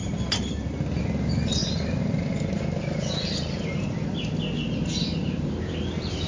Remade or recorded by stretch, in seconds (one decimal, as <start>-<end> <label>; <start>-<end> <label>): 0.0-6.3 recorded